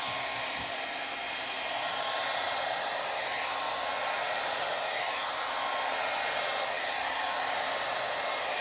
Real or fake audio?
real